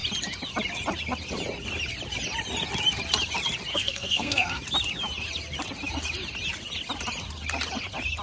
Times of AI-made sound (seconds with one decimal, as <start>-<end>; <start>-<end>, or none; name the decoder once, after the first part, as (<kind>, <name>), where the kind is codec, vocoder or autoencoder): 3.7-4.6 (codec, SNAC)